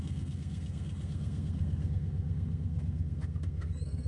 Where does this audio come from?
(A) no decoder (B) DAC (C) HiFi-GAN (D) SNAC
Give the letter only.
D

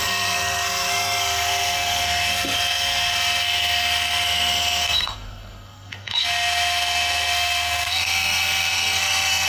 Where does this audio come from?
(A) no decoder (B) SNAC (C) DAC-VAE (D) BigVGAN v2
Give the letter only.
B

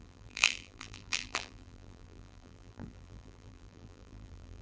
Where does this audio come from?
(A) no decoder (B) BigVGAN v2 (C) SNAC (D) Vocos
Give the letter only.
B